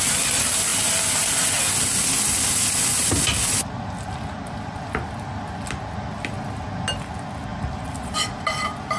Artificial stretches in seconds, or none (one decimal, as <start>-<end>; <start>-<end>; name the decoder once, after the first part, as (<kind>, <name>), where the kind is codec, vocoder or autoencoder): 7.5-8.6 (vocoder, BigVGAN v2)